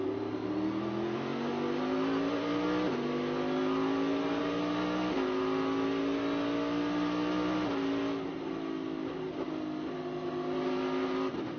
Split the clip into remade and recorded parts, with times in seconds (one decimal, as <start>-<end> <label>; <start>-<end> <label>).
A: 0.0-11.6 recorded